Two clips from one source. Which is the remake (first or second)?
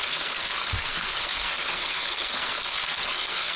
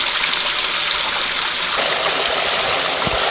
first